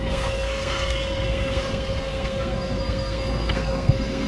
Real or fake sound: fake